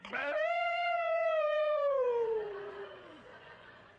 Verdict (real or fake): fake